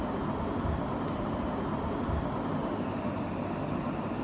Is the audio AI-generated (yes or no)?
no